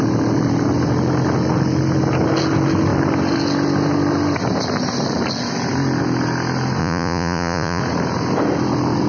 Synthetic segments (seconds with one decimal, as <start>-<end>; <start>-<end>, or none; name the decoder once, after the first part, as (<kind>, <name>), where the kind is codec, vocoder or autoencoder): 6.8-7.8 (vocoder, Vocos)